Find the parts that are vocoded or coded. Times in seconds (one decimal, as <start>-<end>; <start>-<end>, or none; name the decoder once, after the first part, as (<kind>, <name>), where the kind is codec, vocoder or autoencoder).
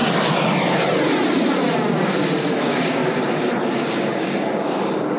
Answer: 2.6-3.0 (codec, DAC); 3.8-5.2